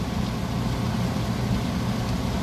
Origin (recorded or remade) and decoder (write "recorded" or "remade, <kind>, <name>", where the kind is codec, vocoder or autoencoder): recorded